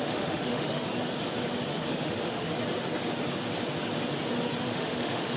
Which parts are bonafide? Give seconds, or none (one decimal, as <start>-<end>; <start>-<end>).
0.9-1.7; 2.5-4.6